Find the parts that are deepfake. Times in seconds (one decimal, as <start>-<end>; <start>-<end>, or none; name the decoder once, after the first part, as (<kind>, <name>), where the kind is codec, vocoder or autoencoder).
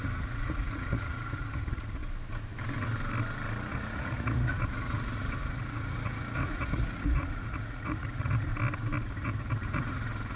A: 0.0-2.0 (vocoder, Vocos); 3.7-8.5; 9.0-10.4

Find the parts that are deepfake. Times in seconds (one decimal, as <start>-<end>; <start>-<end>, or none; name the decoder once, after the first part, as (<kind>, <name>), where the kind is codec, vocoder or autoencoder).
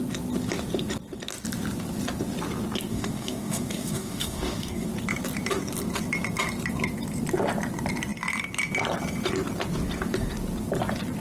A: 2.9-4.9 (codec, DAC)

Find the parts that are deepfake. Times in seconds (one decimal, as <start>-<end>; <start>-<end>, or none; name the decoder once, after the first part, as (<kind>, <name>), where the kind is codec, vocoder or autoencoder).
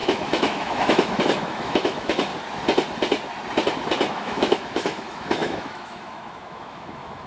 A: 0.0-2.3 (autoencoder, DAC-VAE); 4.1-7.3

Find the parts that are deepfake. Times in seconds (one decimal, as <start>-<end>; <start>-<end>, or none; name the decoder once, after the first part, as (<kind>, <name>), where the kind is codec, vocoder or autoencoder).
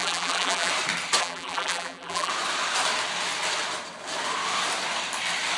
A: 0.0-0.7 (vocoder, BigVGAN v2); 1.2-2.3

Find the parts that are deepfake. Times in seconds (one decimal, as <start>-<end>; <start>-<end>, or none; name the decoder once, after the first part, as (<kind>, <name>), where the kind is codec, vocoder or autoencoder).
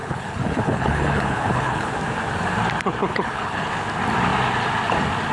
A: 0.0-1.9 (codec, HILCodec); 3.0-3.7